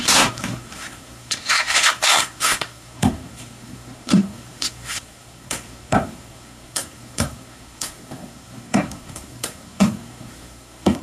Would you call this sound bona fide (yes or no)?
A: no